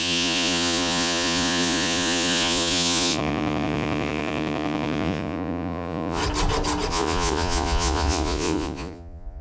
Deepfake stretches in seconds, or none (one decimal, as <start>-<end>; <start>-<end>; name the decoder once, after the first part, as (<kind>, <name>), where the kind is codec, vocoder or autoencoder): 0.0-6.2 (vocoder, Vocos); 6.9-9.4